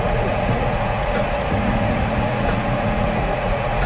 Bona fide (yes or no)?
no